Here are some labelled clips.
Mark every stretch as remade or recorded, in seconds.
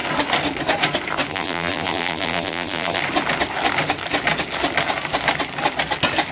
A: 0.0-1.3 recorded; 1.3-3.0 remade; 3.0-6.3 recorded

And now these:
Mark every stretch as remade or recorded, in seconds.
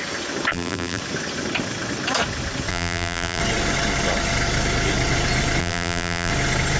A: 0.0-0.5 recorded; 0.5-1.0 remade; 1.0-2.7 recorded; 2.7-3.4 remade; 3.4-5.6 recorded; 5.6-6.3 remade; 6.3-6.8 recorded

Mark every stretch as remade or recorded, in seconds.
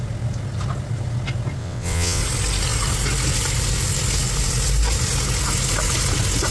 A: 0.0-1.6 recorded; 1.6-2.2 remade; 2.2-6.5 recorded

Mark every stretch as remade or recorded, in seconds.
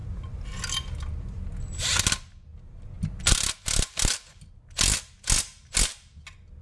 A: 0.0-6.6 recorded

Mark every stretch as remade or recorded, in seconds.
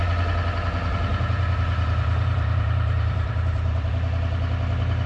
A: 0.0-1.1 recorded; 1.1-3.9 remade; 3.9-5.1 recorded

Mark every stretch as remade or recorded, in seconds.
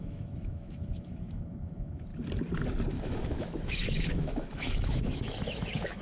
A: 0.0-2.1 remade; 2.1-2.9 recorded; 2.9-6.0 remade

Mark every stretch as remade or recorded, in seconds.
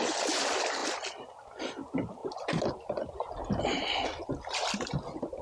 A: 0.0-5.4 recorded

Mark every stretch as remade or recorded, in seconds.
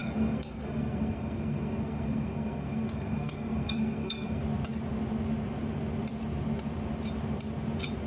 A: 0.0-4.4 remade; 4.4-8.1 recorded